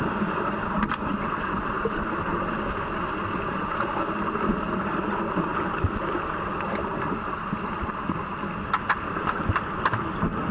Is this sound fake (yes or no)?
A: no